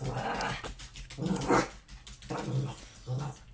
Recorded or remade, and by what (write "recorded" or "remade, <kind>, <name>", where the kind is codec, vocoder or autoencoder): recorded